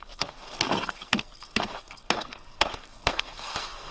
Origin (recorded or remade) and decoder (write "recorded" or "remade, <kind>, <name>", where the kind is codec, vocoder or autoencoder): remade, codec, SNAC